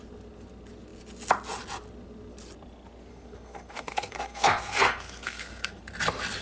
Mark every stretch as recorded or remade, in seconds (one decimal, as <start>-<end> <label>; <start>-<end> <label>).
0.0-3.1 recorded; 3.1-5.8 remade; 5.8-6.4 recorded